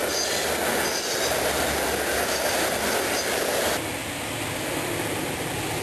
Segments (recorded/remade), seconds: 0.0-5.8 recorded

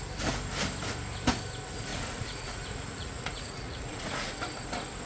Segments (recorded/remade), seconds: 0.0-1.9 recorded; 1.9-4.3 remade; 4.3-5.1 recorded

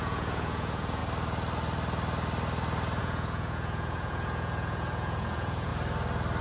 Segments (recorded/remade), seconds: 0.0-1.0 remade; 1.0-3.0 recorded; 3.0-5.7 remade; 5.7-6.4 recorded

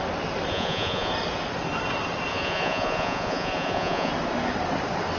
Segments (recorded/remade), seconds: 0.0-0.5 recorded; 0.5-1.1 remade; 1.1-2.3 recorded; 2.3-4.1 remade; 4.1-5.2 recorded

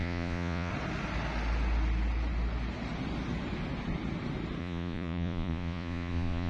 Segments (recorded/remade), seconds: 0.0-0.7 remade; 0.7-4.6 recorded; 4.6-6.5 remade